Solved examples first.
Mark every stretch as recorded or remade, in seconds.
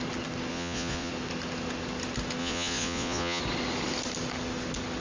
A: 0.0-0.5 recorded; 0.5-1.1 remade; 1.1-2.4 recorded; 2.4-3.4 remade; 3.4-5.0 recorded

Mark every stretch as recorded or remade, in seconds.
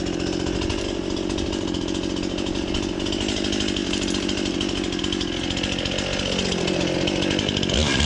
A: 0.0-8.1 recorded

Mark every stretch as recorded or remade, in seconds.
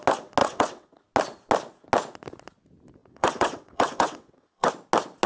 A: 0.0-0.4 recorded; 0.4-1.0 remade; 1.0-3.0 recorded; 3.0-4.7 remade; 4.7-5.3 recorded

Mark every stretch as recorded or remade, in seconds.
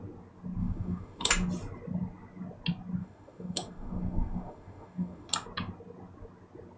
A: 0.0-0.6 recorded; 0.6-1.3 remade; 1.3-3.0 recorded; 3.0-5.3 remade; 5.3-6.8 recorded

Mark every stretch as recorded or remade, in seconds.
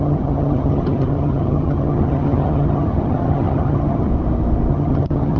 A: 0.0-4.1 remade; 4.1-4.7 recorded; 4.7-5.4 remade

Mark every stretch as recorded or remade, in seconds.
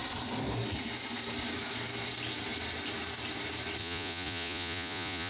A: 0.0-3.8 recorded; 3.8-5.3 remade